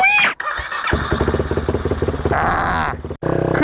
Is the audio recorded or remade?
recorded